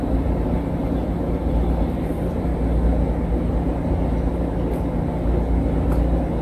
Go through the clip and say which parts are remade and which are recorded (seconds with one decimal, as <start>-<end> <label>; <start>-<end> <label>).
0.0-2.5 remade; 2.5-6.4 recorded